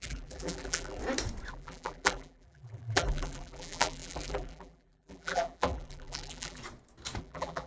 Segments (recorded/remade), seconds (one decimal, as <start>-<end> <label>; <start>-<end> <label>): 0.0-1.0 remade; 1.0-1.5 recorded; 1.5-6.6 remade; 6.6-7.2 recorded; 7.2-7.7 remade